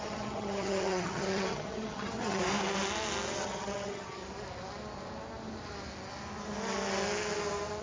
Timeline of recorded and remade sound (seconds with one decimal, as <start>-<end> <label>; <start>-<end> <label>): 0.0-2.4 remade; 2.4-3.3 recorded; 3.3-4.2 remade; 4.2-7.8 recorded